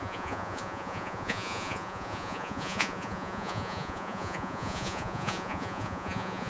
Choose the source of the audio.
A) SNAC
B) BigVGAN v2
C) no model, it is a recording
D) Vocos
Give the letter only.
D